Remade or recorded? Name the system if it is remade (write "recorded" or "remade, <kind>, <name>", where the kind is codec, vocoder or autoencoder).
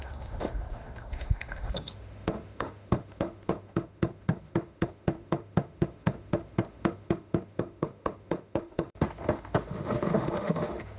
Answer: remade, autoencoder, DAC-VAE